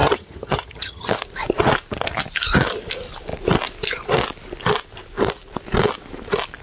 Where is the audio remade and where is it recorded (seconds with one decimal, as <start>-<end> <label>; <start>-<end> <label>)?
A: 0.0-1.1 remade; 1.1-6.6 recorded

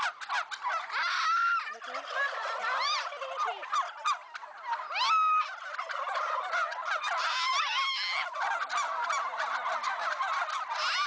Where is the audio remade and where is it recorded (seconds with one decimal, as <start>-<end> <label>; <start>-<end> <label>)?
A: 0.0-11.1 recorded

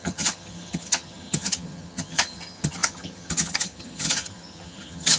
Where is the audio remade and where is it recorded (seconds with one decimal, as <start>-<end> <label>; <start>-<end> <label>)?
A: 0.0-5.2 remade

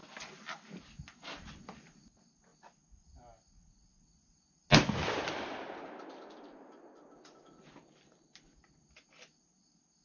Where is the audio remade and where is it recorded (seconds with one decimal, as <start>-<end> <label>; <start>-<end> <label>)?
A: 0.0-10.0 recorded